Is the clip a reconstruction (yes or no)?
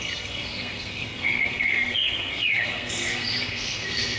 yes